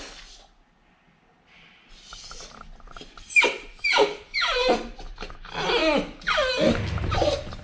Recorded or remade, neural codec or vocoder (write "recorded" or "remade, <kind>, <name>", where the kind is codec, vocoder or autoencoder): recorded